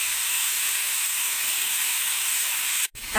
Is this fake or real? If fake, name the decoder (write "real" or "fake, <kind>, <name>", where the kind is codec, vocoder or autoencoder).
fake, codec, DAC